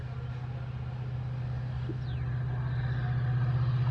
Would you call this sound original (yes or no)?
yes